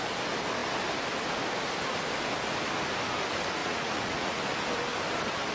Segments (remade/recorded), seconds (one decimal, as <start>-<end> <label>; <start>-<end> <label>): 0.0-3.6 recorded; 3.6-4.4 remade; 4.4-5.5 recorded

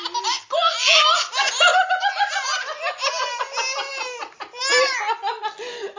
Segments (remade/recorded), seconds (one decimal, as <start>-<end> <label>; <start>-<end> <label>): 0.0-6.0 recorded

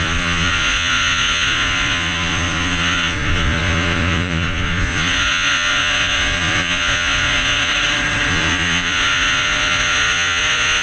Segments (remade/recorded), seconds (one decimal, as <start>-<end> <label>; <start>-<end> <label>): 0.0-7.7 remade; 7.7-8.3 recorded; 8.3-10.8 remade

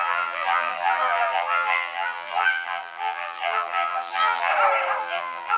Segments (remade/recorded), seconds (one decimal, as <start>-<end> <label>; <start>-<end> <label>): 0.0-4.5 remade; 4.5-5.0 recorded; 5.0-5.6 remade

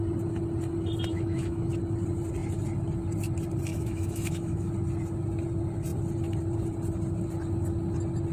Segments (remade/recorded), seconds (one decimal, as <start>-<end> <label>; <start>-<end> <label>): 0.0-1.1 recorded; 1.1-1.7 remade; 1.7-3.7 recorded; 3.7-4.7 remade; 4.7-8.3 recorded

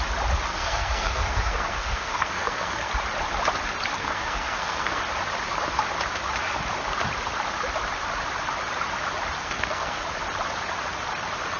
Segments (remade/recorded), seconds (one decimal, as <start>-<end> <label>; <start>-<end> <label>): 0.0-0.5 recorded; 0.5-2.9 remade; 2.9-3.9 recorded; 3.9-5.0 remade; 5.0-9.4 recorded; 9.4-10.0 remade; 10.0-11.6 recorded

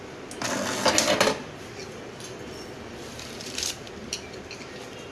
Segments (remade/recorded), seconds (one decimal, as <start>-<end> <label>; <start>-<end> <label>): 0.0-1.8 recorded; 1.8-4.4 remade; 4.4-5.1 recorded

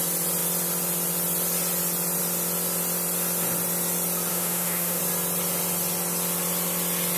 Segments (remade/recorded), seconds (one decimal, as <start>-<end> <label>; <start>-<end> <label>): 0.0-4.3 recorded; 4.3-5.0 remade; 5.0-7.2 recorded